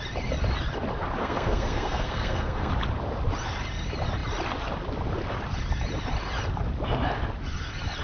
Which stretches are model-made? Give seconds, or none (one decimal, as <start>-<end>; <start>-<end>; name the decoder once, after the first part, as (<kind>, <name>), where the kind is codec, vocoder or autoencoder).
1.2-2.7 (codec, SNAC)